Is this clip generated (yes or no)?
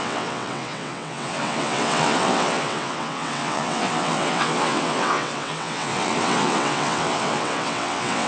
yes